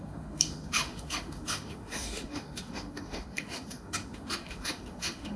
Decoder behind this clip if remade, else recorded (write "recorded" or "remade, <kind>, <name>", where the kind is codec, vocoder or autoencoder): remade, autoencoder, DAC-VAE